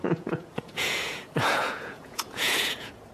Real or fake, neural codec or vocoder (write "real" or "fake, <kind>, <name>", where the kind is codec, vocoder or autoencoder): fake, vocoder, Vocos